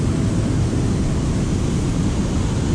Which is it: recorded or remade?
recorded